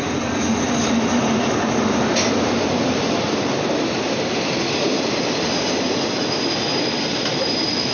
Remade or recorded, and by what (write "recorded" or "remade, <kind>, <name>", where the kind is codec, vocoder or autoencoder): recorded